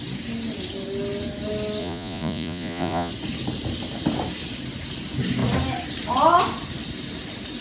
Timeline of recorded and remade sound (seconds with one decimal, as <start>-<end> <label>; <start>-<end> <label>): 0.0-1.8 recorded; 1.8-3.1 remade; 3.1-7.6 recorded